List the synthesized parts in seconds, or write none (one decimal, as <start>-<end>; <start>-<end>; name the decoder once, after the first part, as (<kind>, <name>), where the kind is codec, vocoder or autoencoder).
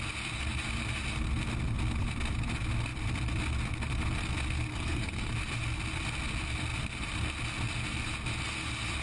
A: 4.7-5.3 (codec, SNAC)